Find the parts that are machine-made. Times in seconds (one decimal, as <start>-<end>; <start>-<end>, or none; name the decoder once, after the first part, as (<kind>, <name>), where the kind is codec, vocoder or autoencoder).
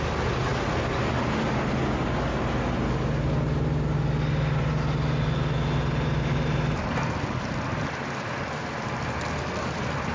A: none